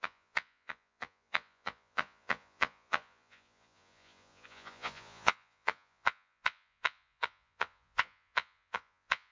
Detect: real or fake fake